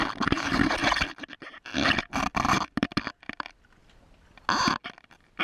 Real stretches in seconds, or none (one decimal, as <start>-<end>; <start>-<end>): 0.0-5.4